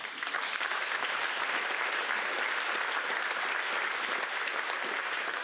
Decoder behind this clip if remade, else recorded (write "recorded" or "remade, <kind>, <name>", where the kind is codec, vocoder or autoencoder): recorded